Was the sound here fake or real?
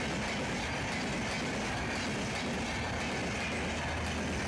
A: real